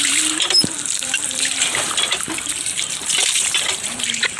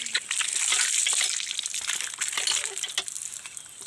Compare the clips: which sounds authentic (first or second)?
second